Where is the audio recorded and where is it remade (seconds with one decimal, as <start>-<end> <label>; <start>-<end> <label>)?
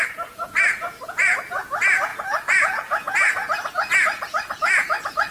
0.0-5.3 remade